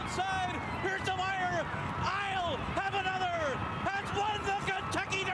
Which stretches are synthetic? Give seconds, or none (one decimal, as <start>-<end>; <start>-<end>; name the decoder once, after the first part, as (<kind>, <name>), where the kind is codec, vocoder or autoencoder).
none